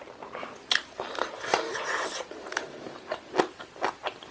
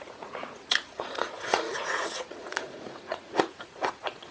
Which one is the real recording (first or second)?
first